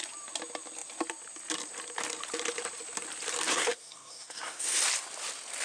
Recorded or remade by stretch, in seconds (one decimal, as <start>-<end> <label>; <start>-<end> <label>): 0.0-3.5 recorded; 3.5-4.8 remade; 4.8-5.6 recorded